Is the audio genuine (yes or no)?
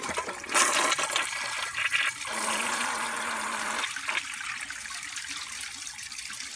yes